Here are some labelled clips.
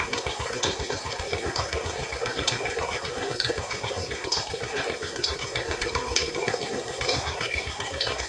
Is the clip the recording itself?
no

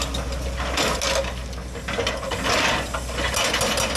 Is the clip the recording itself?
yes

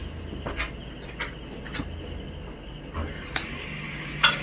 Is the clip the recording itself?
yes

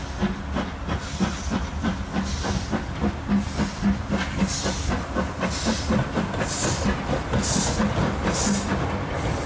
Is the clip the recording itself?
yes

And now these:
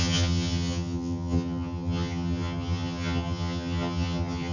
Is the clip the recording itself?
no